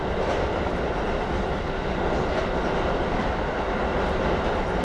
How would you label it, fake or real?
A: real